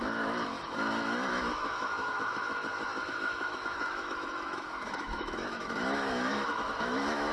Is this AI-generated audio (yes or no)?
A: yes